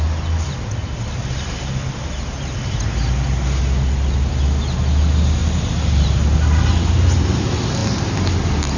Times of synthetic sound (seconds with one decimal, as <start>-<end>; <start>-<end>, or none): none